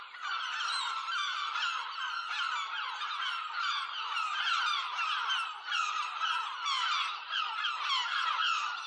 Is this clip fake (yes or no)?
yes